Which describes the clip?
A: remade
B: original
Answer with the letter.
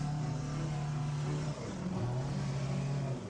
B